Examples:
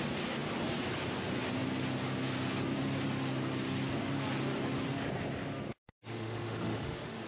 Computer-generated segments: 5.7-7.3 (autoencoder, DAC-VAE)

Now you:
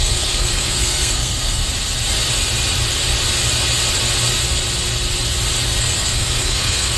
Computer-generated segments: 0.0-1.6 (codec, SNAC); 5.8-7.0

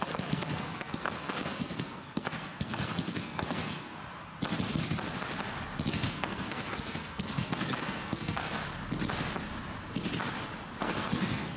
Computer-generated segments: 0.0-4.0 (codec, SNAC); 5.9-8.6; 10.8-11.6

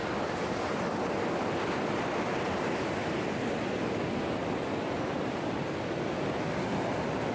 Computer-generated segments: 0.0-2.1 (vocoder, BigVGAN v2)

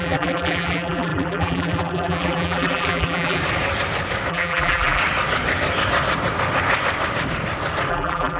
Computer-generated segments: 0.0-3.4 (vocoder, BigVGAN v2); 4.3-5.0; 7.9-8.4

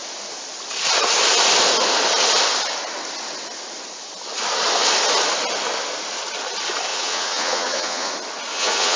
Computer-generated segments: 6.9-8.1 (vocoder, Vocos); 8.5-9.0

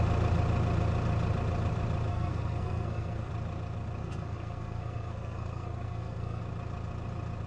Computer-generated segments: 2.1-3.3 (codec, SNAC); 4.0-6.4